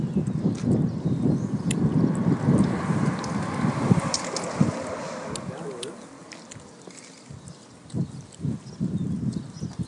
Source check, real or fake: real